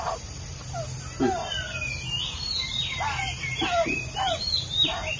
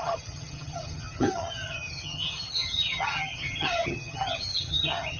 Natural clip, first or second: first